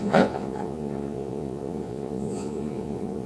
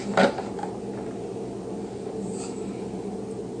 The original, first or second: second